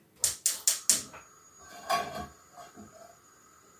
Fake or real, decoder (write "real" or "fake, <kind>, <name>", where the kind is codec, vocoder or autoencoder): real